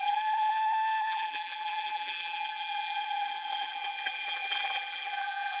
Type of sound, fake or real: fake